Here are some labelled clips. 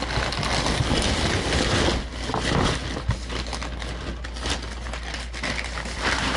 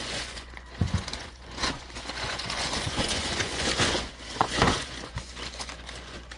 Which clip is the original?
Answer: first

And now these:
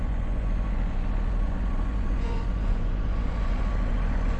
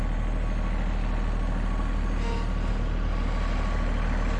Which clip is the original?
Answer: second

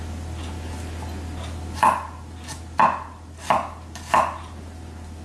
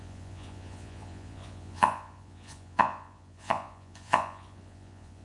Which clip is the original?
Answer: first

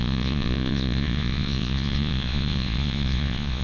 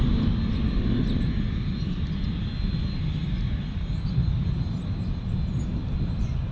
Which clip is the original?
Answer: second